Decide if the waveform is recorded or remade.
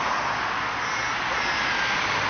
recorded